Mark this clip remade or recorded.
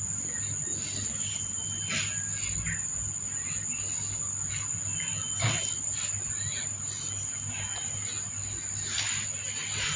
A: recorded